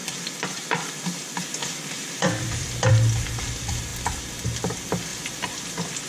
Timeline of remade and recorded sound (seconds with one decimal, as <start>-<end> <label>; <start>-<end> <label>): 0.0-0.9 remade; 0.9-1.6 recorded; 1.6-2.9 remade; 2.9-5.1 recorded; 5.1-6.1 remade